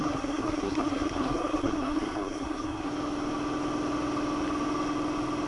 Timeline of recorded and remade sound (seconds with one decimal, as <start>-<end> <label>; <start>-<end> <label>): 0.0-2.9 remade; 2.9-5.5 recorded